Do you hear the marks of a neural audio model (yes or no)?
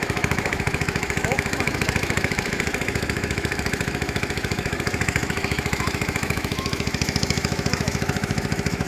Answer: yes